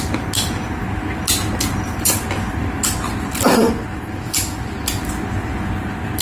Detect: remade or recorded recorded